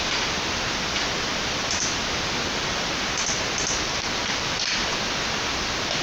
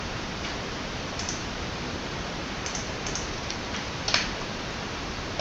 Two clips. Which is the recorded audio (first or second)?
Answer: first